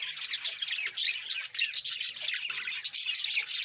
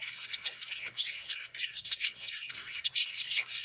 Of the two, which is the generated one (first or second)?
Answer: second